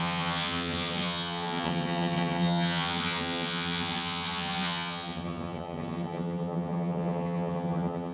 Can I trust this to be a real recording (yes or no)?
no